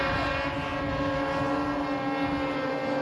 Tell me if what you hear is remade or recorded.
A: recorded